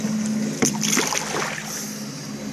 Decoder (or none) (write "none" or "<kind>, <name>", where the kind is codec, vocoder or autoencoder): none